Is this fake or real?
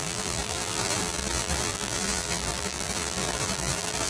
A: fake